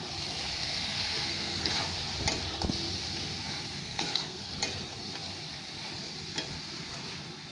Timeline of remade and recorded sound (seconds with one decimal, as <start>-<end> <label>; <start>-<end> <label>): 0.0-0.6 recorded; 0.6-1.7 remade; 1.7-3.8 recorded; 3.8-4.5 remade; 4.5-7.5 recorded